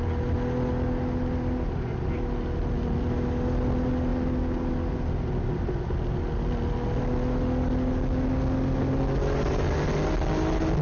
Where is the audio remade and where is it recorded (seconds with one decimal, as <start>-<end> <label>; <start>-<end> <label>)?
0.0-10.8 recorded